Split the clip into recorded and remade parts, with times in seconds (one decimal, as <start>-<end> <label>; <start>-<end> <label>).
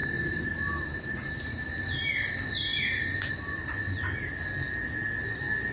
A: 0.0-2.7 recorded; 2.7-3.4 remade; 3.4-5.7 recorded